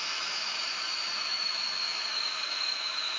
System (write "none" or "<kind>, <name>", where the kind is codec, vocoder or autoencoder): autoencoder, DAC-VAE